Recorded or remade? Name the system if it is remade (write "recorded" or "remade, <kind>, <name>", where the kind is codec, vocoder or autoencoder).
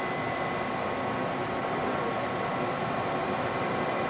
recorded